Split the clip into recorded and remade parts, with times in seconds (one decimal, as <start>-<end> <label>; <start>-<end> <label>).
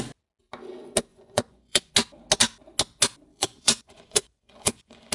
0.0-1.1 recorded; 1.1-1.9 remade; 1.9-3.3 recorded; 3.3-5.1 remade